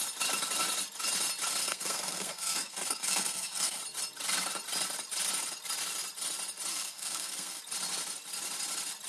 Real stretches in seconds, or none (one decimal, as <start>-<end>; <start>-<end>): 0.0-1.6; 3.8-6.7; 7.6-9.1